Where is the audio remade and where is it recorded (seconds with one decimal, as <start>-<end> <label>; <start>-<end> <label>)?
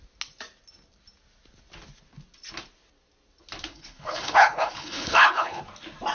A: 0.0-3.7 recorded; 3.7-5.6 remade; 5.6-6.1 recorded